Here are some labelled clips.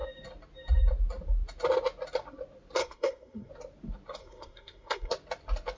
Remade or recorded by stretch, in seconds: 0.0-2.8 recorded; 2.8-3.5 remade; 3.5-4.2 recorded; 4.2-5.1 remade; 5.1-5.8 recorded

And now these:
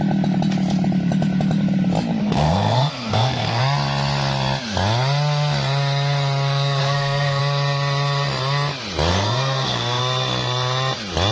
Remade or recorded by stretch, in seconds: 0.0-2.2 recorded; 2.2-3.6 remade; 3.6-6.8 recorded; 6.8-7.4 remade; 7.4-9.1 recorded; 9.1-10.0 remade; 10.0-11.3 recorded

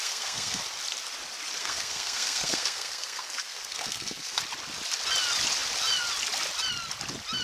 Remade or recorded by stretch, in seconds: 0.0-0.6 remade; 0.6-1.6 recorded; 1.6-4.4 remade; 4.4-7.4 recorded

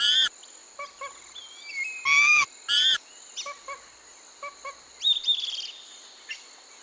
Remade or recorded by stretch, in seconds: 0.0-6.8 recorded

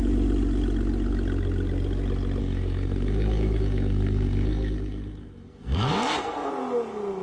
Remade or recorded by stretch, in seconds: 0.0-2.4 recorded; 2.4-6.5 remade; 6.5-7.2 recorded

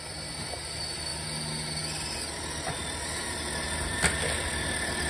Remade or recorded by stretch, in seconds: 0.0-5.1 recorded